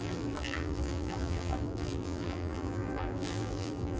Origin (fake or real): fake